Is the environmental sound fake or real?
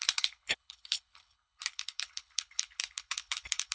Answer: fake